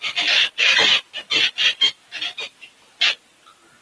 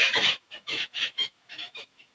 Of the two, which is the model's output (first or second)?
second